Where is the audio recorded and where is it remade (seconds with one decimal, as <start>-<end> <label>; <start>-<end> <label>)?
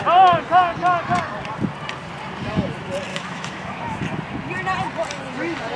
0.0-3.1 recorded; 3.1-4.0 remade; 4.0-5.8 recorded